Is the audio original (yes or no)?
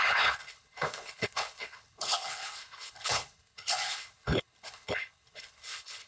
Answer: no